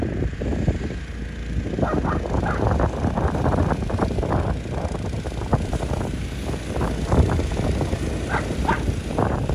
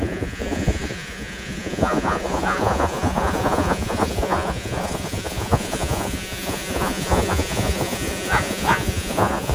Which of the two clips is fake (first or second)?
second